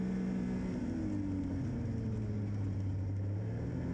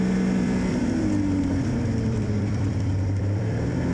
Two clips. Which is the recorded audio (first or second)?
first